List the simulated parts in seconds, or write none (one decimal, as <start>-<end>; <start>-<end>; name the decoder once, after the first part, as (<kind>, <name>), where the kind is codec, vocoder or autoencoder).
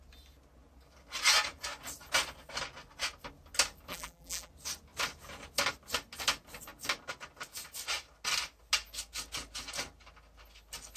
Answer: 3.9-4.5 (vocoder, BigVGAN v2)